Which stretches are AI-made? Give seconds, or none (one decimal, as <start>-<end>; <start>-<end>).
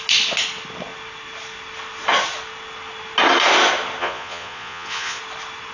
4.0-5.2